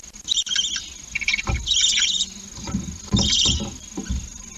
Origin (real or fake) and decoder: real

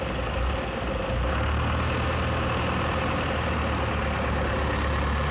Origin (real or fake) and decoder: real